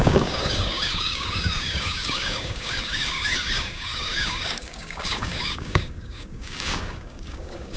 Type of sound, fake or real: fake